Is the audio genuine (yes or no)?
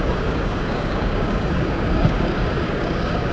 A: no